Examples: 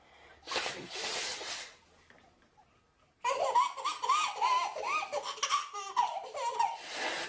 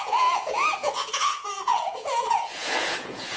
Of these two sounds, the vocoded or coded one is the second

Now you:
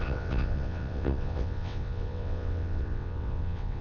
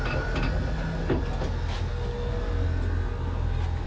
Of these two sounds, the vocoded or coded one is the first